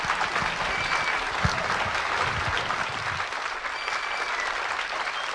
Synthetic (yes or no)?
no